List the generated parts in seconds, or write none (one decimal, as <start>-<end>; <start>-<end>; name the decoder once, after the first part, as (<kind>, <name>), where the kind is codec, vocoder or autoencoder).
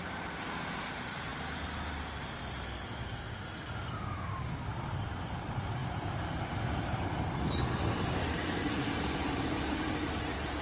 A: none